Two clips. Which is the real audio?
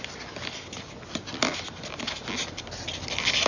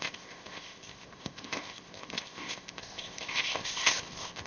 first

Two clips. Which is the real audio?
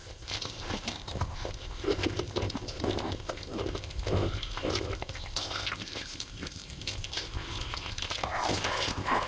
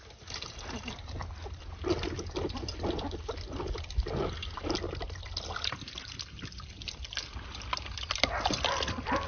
second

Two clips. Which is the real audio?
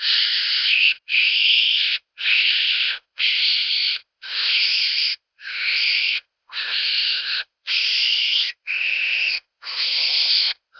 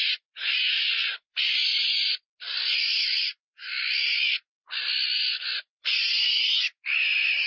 second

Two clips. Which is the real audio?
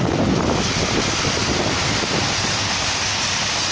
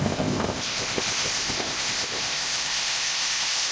first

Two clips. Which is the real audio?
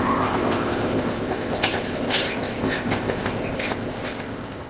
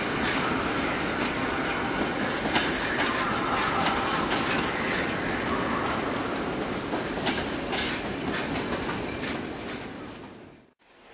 second